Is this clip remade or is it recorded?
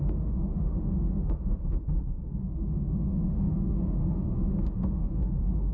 remade